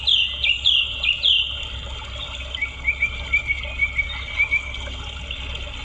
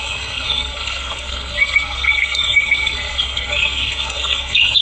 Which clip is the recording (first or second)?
first